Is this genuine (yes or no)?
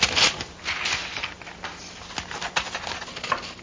yes